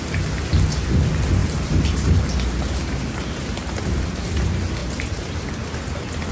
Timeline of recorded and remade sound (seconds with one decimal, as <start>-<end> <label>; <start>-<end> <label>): 0.0-1.4 recorded; 1.4-4.2 remade; 4.2-4.8 recorded; 4.8-5.4 remade; 5.4-6.3 recorded